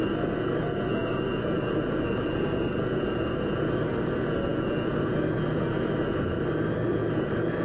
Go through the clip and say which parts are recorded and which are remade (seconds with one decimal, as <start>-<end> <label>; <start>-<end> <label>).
0.0-7.6 recorded